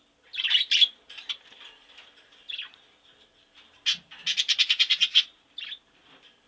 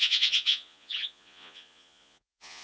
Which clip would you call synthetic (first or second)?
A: second